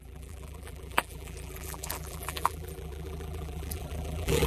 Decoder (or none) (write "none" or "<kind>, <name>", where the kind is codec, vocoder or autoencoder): vocoder, BigVGAN v2